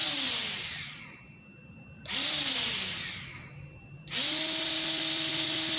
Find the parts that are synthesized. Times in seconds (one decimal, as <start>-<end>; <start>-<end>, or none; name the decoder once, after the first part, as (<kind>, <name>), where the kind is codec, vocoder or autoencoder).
0.0-0.6 (vocoder, BigVGAN v2); 1.6-4.6